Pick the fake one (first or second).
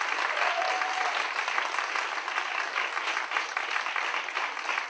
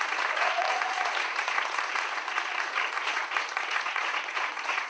second